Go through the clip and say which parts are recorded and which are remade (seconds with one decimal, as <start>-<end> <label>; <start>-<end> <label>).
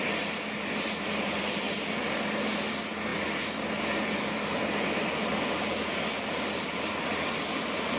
0.0-8.0 recorded